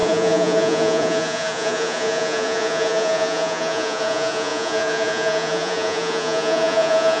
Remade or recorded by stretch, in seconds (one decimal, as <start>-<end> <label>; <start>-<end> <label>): 0.0-7.2 remade

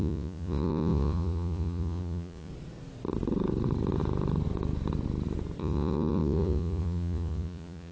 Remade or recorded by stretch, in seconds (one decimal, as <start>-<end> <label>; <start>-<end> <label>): 0.0-2.5 remade; 2.5-5.6 recorded; 5.6-7.9 remade

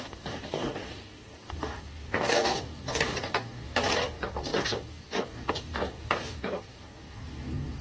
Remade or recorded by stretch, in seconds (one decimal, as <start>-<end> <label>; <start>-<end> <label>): 0.0-7.8 remade

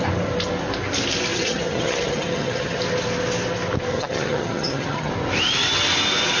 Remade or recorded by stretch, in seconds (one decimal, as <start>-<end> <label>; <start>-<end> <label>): 0.0-1.3 recorded; 1.3-2.8 remade; 2.8-3.9 recorded; 3.9-5.1 remade; 5.1-6.4 recorded